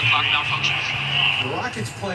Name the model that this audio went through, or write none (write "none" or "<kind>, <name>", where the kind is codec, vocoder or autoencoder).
none